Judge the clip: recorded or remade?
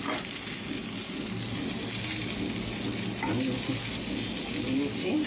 recorded